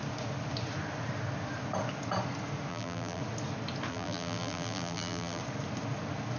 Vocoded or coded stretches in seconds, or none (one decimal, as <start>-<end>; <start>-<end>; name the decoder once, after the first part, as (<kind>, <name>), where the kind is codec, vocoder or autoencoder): 2.7-3.2 (vocoder, BigVGAN v2); 3.9-5.4